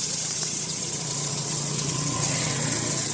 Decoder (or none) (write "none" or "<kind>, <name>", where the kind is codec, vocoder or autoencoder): vocoder, WaveNeXt